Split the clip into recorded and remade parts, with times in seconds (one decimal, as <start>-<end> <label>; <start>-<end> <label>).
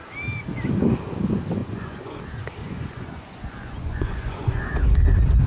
0.0-1.6 recorded; 1.6-2.2 remade; 2.2-2.6 recorded; 2.6-4.6 remade; 4.6-5.5 recorded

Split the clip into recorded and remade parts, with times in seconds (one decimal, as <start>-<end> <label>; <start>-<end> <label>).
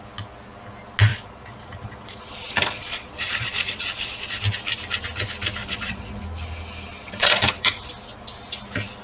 0.0-1.1 recorded; 1.1-4.4 remade; 4.4-5.6 recorded; 5.6-6.2 remade; 6.2-7.0 recorded; 7.0-7.9 remade; 7.9-9.0 recorded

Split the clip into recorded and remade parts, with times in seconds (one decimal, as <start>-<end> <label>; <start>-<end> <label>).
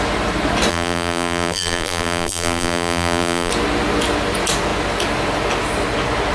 0.0-0.7 recorded; 0.7-3.5 remade; 3.5-6.3 recorded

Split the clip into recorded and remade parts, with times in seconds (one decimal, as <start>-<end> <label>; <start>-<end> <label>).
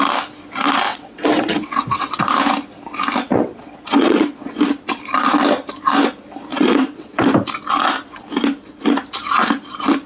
0.0-0.9 recorded; 0.9-2.2 remade; 2.2-3.3 recorded; 3.3-4.6 remade; 4.6-6.5 recorded; 6.5-7.3 remade; 7.3-10.1 recorded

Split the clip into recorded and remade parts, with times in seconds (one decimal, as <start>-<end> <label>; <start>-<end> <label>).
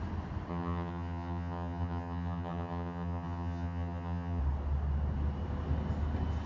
0.0-0.5 recorded; 0.5-4.4 remade; 4.4-6.5 recorded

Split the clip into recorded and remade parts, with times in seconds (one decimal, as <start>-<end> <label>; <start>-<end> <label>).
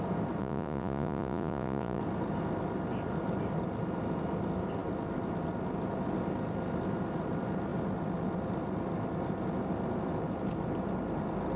0.0-0.4 recorded; 0.4-2.0 remade; 2.0-11.6 recorded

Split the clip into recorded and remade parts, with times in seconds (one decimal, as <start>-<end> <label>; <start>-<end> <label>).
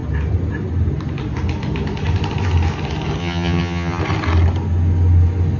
0.0-3.2 recorded; 3.2-4.0 remade; 4.0-5.6 recorded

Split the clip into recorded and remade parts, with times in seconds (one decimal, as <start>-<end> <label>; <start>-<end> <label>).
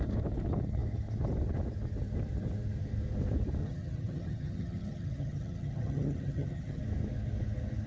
0.0-3.6 recorded; 3.6-6.8 remade; 6.8-7.9 recorded